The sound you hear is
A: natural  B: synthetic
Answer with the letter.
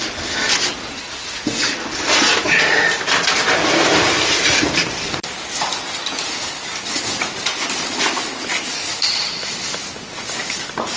A